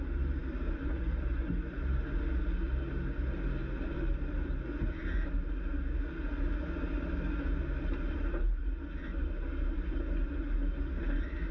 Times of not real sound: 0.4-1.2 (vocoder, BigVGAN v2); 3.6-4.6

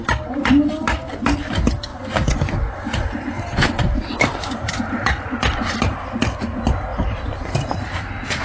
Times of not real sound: 3.6-5.1 (vocoder, BigVGAN v2)